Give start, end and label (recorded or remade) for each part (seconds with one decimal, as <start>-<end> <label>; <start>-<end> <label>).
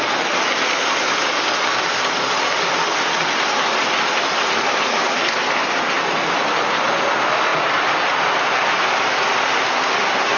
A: 0.0-10.4 recorded